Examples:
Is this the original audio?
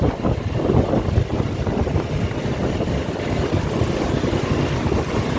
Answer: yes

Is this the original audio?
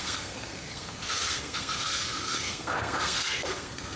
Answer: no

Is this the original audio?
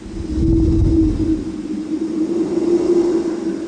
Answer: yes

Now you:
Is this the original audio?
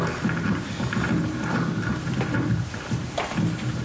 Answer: yes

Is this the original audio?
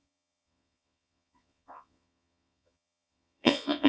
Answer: no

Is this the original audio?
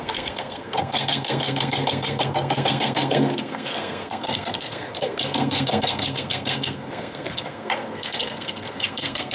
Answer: no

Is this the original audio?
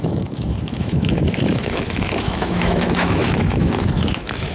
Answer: no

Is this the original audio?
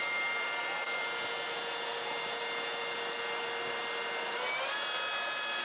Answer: yes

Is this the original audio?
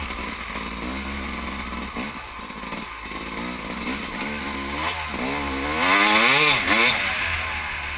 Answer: yes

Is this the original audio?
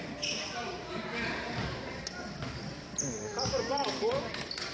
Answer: yes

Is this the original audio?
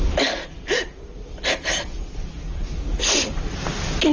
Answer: yes